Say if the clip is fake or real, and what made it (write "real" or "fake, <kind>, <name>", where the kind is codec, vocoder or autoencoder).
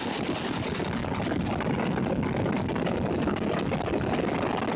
real